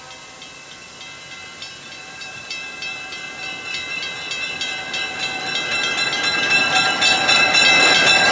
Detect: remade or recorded recorded